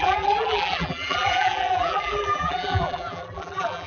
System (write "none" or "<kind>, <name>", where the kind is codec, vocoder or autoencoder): vocoder, BigVGAN v2